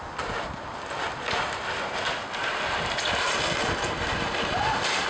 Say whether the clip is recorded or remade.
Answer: recorded